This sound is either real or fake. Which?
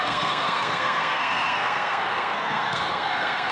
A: fake